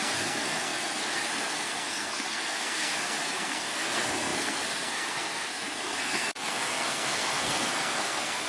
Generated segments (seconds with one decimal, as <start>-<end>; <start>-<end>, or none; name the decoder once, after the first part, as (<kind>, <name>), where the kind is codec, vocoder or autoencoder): 0.0-8.5 (codec, SNAC)